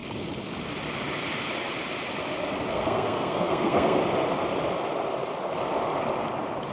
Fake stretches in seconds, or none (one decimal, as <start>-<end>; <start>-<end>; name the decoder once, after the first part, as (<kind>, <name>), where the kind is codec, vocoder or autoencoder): 2.7-4.0 (codec, SNAC)